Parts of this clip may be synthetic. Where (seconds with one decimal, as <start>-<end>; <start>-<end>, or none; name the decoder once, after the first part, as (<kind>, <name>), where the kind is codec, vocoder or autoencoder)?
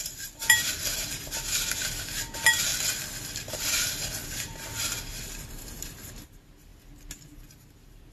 0.0-2.7 (vocoder, BigVGAN v2); 3.5-6.7; 7.5-8.1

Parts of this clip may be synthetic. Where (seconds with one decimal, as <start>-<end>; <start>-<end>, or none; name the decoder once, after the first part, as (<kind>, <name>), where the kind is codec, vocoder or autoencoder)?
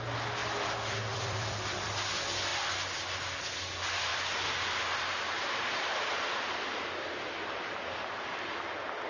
0.4-1.9 (vocoder, BigVGAN v2); 4.1-6.8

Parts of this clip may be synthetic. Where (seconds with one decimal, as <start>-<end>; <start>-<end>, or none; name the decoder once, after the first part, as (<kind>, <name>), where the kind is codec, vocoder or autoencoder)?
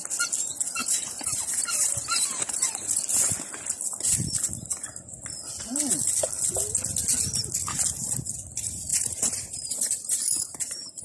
0.8-3.0 (vocoder, BigVGAN v2); 8.9-11.0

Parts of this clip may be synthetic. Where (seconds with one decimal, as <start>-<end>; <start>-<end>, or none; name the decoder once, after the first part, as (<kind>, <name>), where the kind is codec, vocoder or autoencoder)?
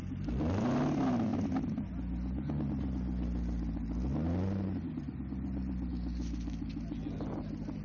none